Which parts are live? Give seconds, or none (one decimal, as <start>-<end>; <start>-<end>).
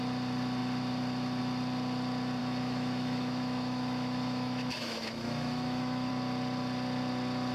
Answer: 0.0-2.4; 6.1-7.5